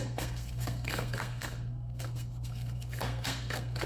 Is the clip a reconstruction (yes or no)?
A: yes